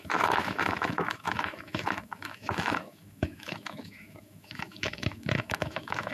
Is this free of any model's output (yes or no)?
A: no